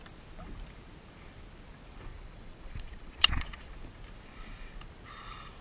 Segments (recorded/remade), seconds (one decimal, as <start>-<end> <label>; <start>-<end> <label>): 0.0-2.1 recorded; 2.1-3.7 remade; 3.7-5.6 recorded